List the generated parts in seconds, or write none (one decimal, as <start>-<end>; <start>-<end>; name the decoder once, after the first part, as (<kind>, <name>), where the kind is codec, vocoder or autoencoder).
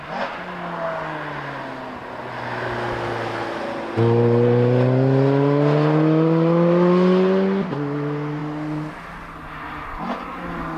none